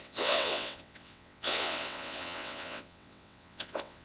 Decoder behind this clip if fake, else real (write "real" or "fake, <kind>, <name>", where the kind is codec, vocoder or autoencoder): fake, vocoder, WaveNeXt